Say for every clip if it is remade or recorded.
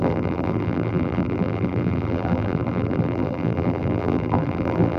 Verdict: remade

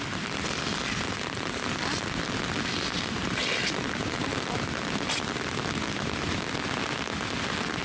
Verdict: recorded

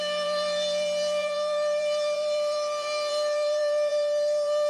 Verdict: remade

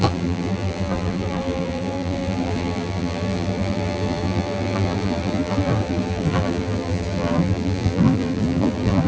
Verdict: remade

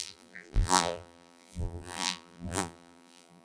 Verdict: remade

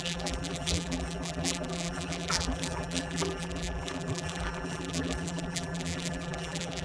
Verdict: remade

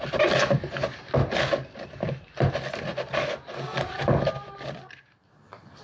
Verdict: recorded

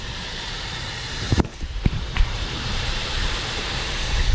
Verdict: remade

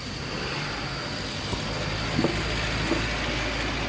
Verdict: recorded